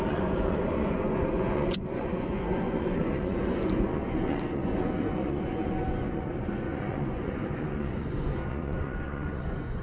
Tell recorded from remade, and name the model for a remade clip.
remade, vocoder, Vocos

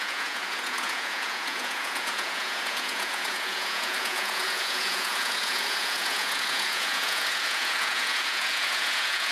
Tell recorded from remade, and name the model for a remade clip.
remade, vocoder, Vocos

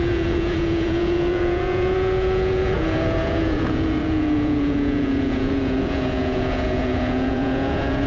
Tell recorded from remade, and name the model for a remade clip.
remade, vocoder, Vocos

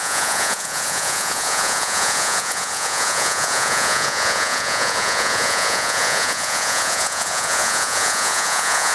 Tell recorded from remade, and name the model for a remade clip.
remade, vocoder, Vocos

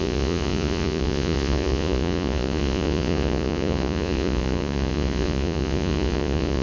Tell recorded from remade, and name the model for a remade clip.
remade, vocoder, Vocos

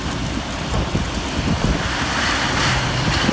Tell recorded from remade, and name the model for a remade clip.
recorded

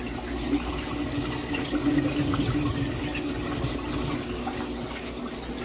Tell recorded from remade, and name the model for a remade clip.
recorded